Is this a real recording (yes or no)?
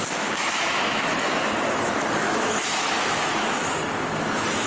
no